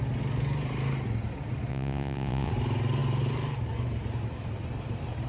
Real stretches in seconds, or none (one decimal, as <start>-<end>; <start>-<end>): 0.0-1.7; 2.5-5.3